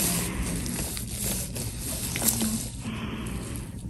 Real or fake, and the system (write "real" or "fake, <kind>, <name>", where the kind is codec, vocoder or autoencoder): real